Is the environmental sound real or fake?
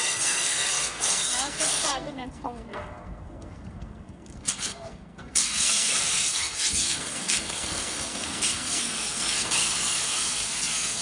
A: fake